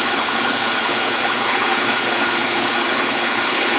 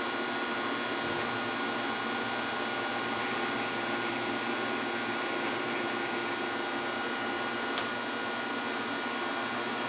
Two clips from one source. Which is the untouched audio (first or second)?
second